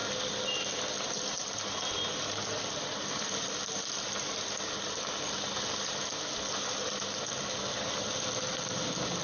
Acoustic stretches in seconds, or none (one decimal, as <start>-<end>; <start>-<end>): 0.0-9.2